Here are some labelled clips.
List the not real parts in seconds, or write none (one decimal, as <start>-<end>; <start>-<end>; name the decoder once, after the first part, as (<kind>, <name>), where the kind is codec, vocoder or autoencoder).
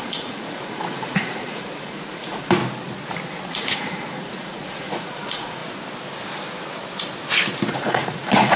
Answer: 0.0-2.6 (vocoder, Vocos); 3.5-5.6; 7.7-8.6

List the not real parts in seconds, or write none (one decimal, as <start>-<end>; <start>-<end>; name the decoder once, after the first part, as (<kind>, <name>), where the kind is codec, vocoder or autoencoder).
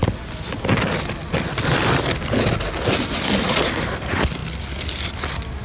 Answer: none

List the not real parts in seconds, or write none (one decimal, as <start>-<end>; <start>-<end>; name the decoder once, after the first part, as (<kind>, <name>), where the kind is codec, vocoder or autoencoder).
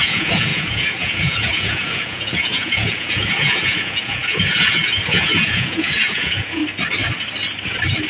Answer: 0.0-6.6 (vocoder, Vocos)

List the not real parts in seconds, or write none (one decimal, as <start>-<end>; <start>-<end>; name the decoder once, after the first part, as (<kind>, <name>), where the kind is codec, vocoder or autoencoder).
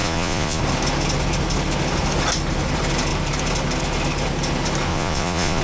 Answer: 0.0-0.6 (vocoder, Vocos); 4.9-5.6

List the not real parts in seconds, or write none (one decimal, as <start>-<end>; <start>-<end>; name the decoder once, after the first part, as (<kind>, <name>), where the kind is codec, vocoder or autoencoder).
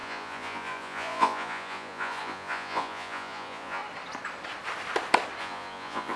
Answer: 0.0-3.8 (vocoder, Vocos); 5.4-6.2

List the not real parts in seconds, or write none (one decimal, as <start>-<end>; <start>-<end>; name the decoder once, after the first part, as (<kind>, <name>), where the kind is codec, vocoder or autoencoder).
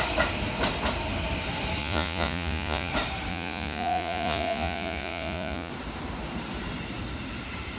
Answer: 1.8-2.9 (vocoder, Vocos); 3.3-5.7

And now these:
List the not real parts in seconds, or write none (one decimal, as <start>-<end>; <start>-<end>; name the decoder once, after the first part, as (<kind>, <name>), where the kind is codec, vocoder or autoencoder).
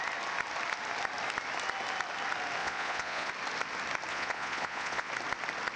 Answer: 2.6-3.3 (vocoder, Vocos); 4.1-5.1